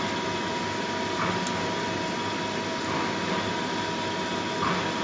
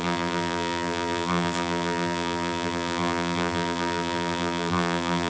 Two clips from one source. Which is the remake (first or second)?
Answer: second